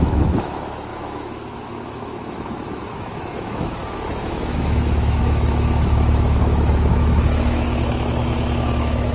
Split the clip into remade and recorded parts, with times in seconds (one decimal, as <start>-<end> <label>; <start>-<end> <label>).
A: 0.0-9.1 remade

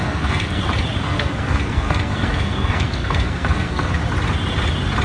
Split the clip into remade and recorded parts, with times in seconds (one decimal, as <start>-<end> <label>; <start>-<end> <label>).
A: 0.0-0.6 remade; 0.6-1.0 recorded; 1.0-4.0 remade; 4.0-5.0 recorded

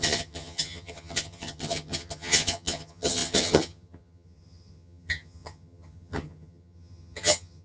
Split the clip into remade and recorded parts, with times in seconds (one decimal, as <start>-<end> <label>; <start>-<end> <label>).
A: 0.0-7.6 remade

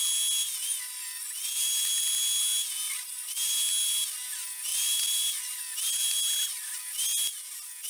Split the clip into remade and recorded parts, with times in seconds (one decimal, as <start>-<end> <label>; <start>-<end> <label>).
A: 0.0-4.7 recorded; 4.7-5.4 remade; 5.4-7.1 recorded; 7.1-7.9 remade